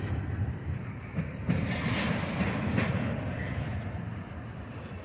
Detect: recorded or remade recorded